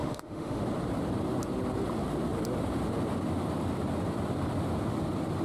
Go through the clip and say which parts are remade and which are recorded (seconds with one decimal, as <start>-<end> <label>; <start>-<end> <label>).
0.0-0.6 remade; 0.6-5.4 recorded